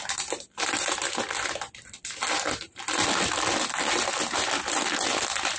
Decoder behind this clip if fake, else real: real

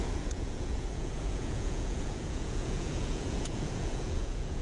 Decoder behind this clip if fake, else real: fake, vocoder, Vocos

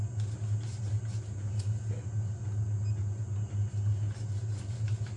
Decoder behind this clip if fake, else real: real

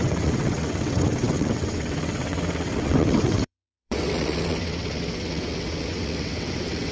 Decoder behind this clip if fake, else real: fake, vocoder, WaveNeXt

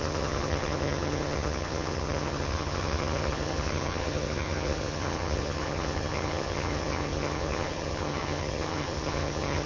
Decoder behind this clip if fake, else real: fake, vocoder, HiFi-GAN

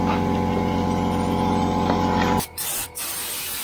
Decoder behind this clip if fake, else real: real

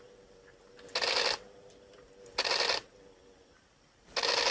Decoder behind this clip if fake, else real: real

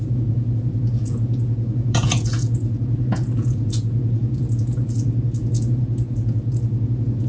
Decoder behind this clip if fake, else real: fake, vocoder, Vocos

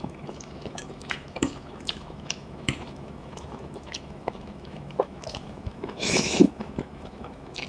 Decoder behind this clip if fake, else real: fake, autoencoder, DAC-VAE